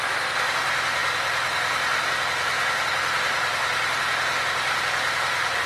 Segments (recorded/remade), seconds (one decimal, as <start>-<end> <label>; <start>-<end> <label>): 0.0-5.7 recorded